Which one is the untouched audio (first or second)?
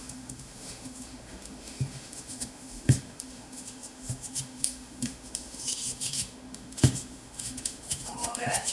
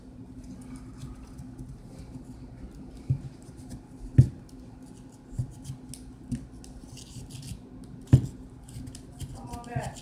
second